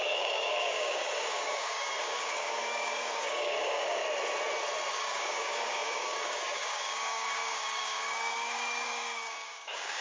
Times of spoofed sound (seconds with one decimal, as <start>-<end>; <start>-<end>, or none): 0.0-4.0; 4.9-10.0